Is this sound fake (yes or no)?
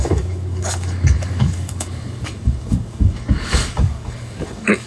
yes